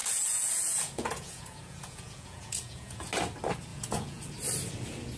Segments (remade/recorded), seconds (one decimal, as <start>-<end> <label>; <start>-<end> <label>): 0.0-3.1 remade; 3.1-3.7 recorded; 3.7-4.3 remade; 4.3-5.2 recorded